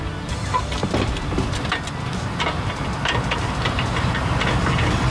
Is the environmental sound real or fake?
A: fake